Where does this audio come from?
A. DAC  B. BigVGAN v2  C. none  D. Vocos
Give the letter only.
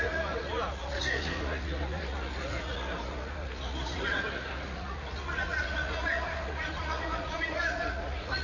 D